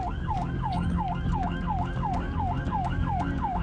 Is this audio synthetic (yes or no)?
yes